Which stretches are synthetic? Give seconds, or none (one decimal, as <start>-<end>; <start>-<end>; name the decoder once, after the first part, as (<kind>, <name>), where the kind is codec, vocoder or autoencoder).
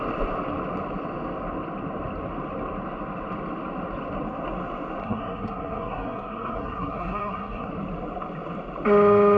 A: 5.0-7.7 (codec, SNAC)